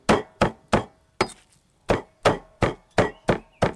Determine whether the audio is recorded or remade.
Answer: recorded